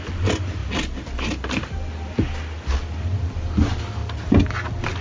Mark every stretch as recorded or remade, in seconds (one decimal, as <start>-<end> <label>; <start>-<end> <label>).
0.0-5.0 recorded